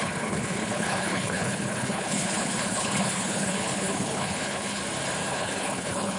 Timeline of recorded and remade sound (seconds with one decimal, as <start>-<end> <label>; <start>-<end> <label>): 0.0-4.8 remade; 4.8-5.3 recorded; 5.3-6.2 remade